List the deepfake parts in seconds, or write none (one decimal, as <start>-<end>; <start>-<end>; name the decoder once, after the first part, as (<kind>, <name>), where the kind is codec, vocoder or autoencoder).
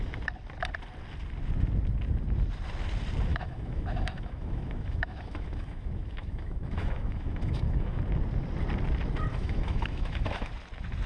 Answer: 3.3-8.0 (autoencoder, DAC-VAE); 9.3-10.5